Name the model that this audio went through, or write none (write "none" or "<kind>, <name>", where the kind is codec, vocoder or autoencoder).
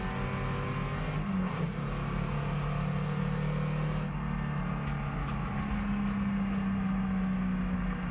none